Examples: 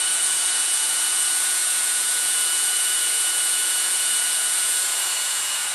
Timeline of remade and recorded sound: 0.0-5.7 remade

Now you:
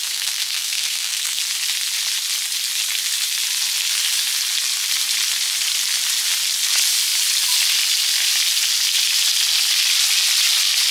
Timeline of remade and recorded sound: 0.0-1.4 remade; 1.4-10.9 recorded